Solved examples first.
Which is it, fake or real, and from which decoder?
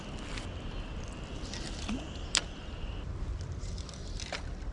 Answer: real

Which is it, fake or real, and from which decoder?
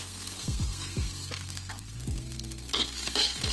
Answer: fake, codec, SNAC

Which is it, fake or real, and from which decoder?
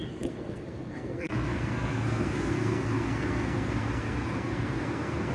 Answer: fake, codec, SNAC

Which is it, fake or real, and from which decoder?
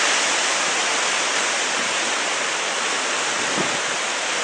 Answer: real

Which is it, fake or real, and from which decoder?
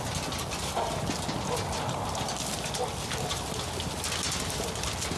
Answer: real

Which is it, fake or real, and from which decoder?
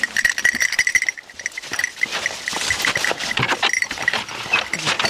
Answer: real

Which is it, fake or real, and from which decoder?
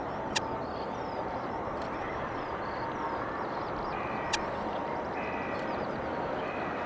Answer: real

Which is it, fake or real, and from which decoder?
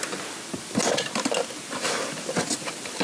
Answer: real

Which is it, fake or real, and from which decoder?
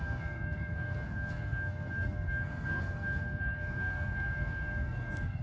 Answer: fake, codec, SNAC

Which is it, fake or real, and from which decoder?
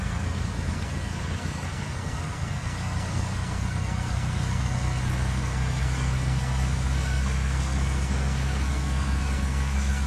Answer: fake, codec, SNAC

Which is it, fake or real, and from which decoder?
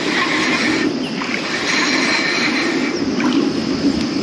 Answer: real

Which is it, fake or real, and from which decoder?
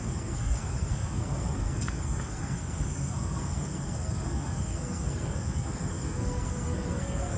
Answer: fake, codec, SNAC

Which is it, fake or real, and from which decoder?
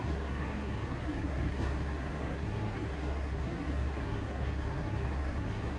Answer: fake, codec, SNAC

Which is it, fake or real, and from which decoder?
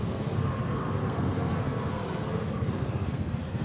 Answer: fake, codec, SNAC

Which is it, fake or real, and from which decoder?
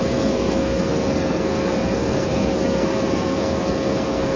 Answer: fake, codec, SNAC